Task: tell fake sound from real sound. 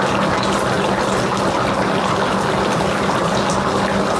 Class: real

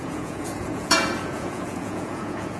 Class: fake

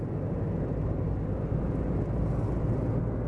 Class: real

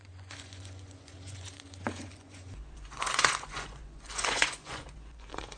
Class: fake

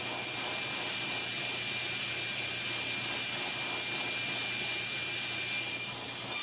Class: real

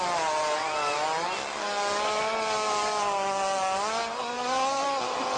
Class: real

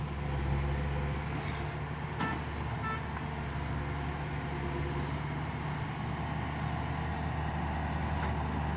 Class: real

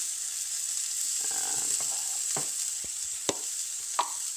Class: real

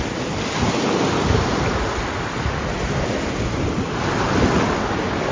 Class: real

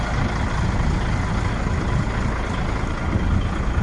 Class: real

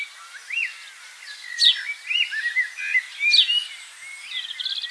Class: real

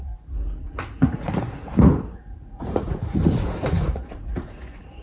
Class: fake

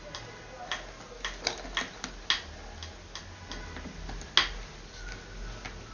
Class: real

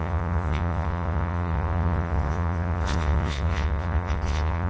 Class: fake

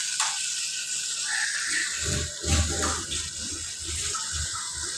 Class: real